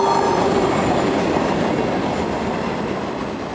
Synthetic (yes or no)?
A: no